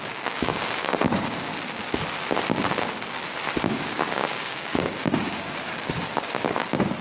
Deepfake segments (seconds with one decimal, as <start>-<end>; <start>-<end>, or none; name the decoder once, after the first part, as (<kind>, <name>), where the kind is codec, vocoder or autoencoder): 0.0-1.5 (codec, DAC); 3.7-7.0